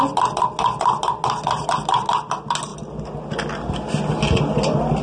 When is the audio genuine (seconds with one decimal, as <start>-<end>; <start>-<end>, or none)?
0.0-5.0